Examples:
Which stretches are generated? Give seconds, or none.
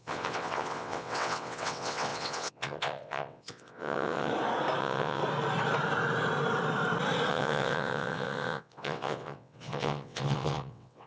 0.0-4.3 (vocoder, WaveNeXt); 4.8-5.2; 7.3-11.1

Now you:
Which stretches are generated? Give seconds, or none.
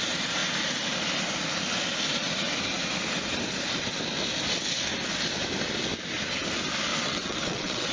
6.9-7.9 (vocoder, WaveNeXt)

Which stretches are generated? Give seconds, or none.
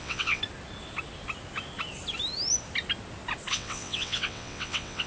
0.0-0.4 (vocoder, WaveNeXt); 3.5-5.1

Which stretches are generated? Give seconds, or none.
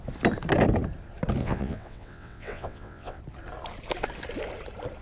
1.4-3.2 (vocoder, WaveNeXt)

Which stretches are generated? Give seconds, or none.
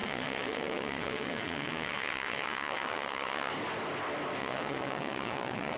0.0-3.5 (vocoder, WaveNeXt); 4.4-5.8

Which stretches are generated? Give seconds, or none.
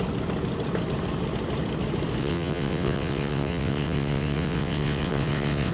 2.2-5.7 (vocoder, WaveNeXt)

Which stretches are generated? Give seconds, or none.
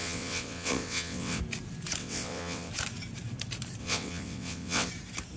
0.0-1.4 (vocoder, WaveNeXt); 2.0-2.7; 3.8-4.9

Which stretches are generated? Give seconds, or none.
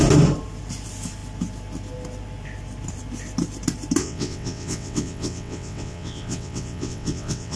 4.0-7.6 (vocoder, WaveNeXt)